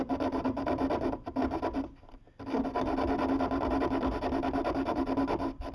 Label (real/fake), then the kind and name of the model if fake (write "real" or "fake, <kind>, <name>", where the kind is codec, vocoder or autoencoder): real